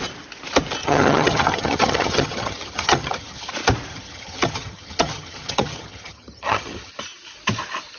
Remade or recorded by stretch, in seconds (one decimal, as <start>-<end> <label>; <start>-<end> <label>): 0.0-0.8 recorded; 0.8-3.5 remade; 3.5-3.9 recorded; 3.9-6.9 remade; 6.9-8.0 recorded